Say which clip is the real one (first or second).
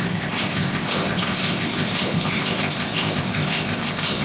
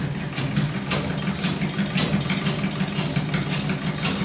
second